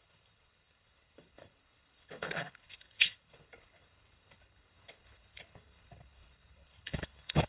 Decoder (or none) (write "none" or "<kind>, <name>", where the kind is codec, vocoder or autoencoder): codec, HILCodec